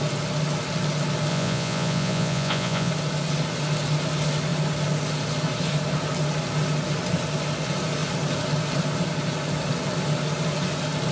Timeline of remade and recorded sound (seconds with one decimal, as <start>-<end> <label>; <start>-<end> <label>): 0.0-1.3 recorded; 1.3-2.9 remade; 2.9-11.1 recorded